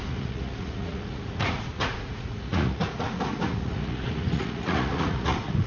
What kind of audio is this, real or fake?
fake